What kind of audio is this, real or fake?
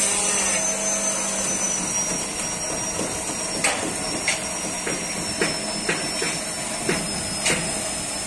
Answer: real